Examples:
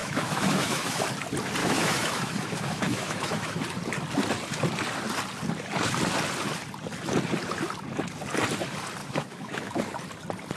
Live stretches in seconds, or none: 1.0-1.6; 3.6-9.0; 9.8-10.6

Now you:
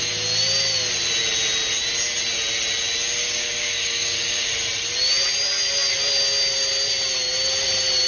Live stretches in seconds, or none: 0.0-3.2; 4.5-8.1